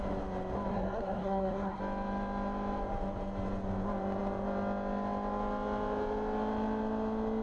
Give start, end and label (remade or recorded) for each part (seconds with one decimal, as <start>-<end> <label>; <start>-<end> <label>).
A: 0.0-0.7 recorded; 0.7-1.8 remade; 1.8-7.4 recorded